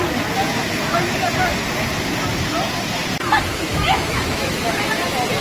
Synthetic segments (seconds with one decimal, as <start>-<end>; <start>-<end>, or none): 3.5-4.8